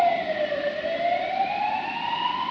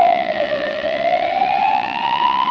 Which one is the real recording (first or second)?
first